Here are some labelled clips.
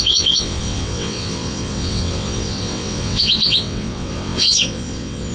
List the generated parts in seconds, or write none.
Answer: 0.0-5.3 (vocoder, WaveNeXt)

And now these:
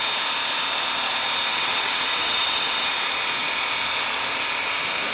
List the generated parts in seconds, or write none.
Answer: 1.5-2.9 (vocoder, WaveNeXt)

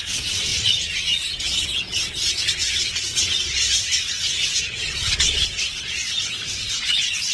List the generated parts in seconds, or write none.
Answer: 0.0-7.3 (vocoder, WaveNeXt)

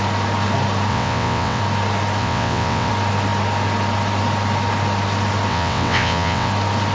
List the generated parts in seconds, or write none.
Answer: 0.9-1.6 (vocoder, WaveNeXt); 2.2-2.9; 5.5-6.5

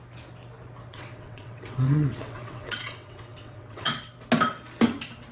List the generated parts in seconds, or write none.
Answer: 0.9-4.1 (vocoder, WaveNeXt)

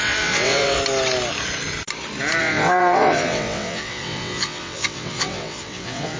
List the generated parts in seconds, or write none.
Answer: 0.0-0.8 (vocoder, WaveNeXt); 2.4-6.2